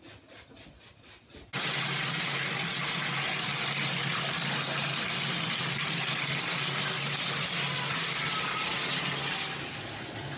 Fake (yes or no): no